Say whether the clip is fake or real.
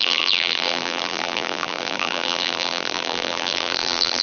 fake